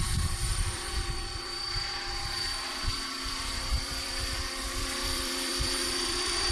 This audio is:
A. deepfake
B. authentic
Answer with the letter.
A